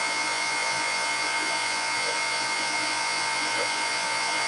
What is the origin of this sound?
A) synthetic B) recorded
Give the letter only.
A